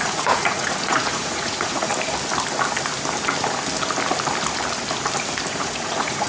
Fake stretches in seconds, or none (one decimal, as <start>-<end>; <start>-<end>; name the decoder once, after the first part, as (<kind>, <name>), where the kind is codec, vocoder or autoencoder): 0.0-1.9 (vocoder, Vocos); 5.5-6.3